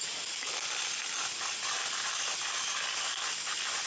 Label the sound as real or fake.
real